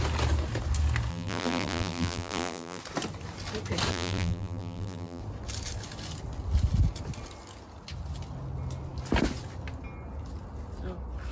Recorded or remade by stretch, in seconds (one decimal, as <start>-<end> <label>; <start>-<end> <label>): 0.0-1.1 recorded; 1.1-2.8 remade; 2.8-3.9 recorded; 3.9-5.2 remade; 5.2-11.3 recorded